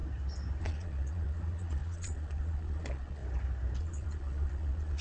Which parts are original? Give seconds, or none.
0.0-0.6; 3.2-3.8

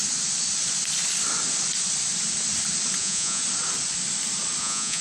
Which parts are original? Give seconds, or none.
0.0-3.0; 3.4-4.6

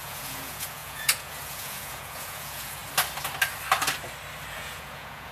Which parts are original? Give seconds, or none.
2.8-4.5

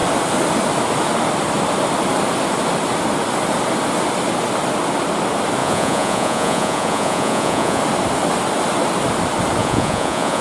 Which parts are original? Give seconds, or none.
0.0-5.6; 7.8-9.6